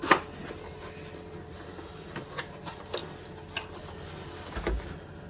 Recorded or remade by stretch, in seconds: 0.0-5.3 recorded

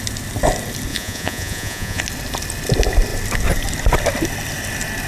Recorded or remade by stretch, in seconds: 0.0-0.9 recorded; 0.9-2.0 remade; 2.0-5.1 recorded

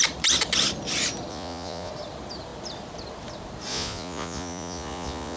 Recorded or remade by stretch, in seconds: 0.0-1.3 recorded; 1.3-1.9 remade; 1.9-3.7 recorded; 3.7-5.4 remade

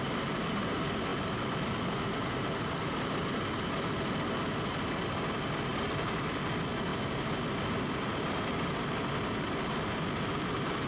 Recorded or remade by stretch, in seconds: 0.0-10.9 recorded

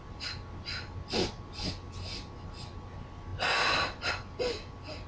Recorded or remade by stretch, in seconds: 0.0-5.1 recorded